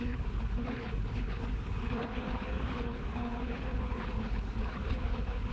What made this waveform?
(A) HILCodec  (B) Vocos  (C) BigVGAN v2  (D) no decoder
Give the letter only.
A